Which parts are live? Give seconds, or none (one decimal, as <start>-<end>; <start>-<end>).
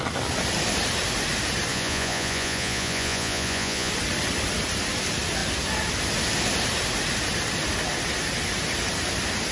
0.0-1.7; 3.9-9.5